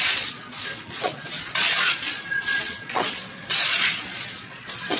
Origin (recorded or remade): remade